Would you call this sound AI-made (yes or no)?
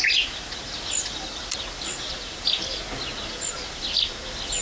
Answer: no